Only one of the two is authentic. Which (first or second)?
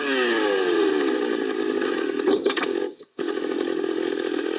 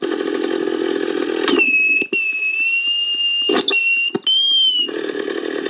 second